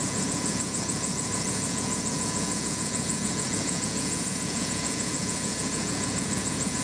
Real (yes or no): no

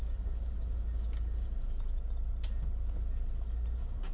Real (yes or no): yes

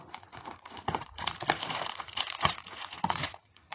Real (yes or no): no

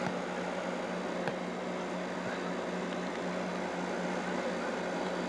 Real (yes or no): yes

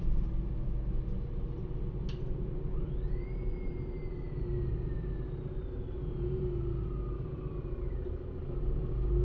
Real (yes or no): yes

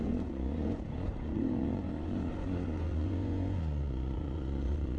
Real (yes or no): no